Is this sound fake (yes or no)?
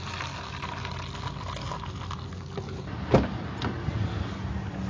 no